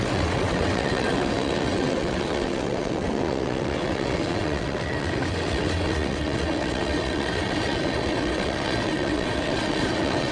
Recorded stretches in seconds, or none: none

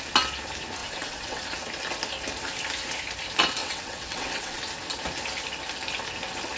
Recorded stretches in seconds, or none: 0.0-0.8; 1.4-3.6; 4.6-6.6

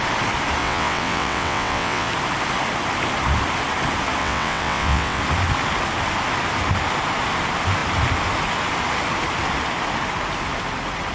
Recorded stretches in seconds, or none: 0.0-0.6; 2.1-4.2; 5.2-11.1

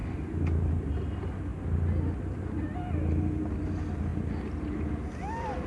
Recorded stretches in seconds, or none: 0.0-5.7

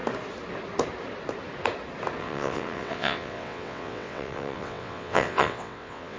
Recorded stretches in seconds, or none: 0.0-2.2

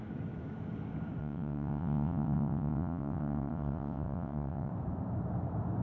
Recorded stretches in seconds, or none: 0.0-1.2; 4.7-5.8

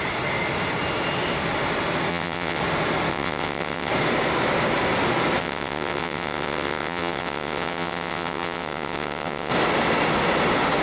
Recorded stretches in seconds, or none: 0.0-2.1; 2.6-3.1; 3.9-5.4; 9.5-10.8